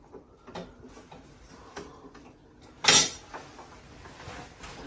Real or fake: real